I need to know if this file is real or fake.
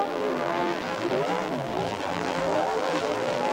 fake